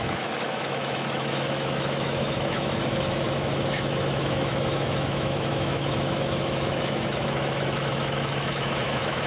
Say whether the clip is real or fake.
fake